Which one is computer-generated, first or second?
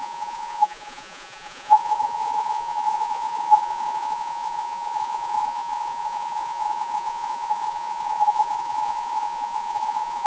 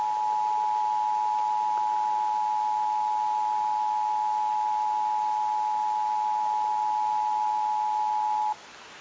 first